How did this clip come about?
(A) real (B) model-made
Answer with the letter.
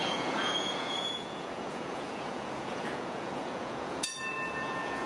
B